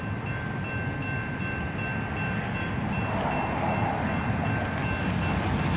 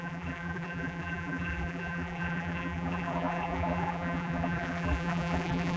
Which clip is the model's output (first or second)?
second